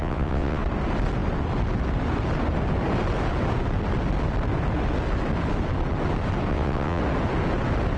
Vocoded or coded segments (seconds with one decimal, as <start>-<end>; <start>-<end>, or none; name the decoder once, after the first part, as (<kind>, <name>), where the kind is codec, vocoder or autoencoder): 0.0-0.6 (vocoder, WaveNeXt); 6.5-7.0